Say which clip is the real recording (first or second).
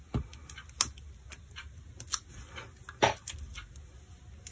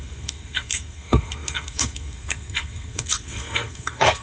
first